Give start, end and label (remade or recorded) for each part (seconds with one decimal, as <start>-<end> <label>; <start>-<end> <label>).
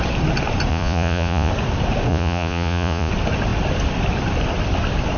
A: 0.0-0.7 recorded; 0.7-1.5 remade; 1.5-2.1 recorded; 2.1-3.1 remade; 3.1-5.2 recorded